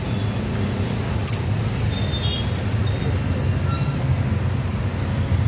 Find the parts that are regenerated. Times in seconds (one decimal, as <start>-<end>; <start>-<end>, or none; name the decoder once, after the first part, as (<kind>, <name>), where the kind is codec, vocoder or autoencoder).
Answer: none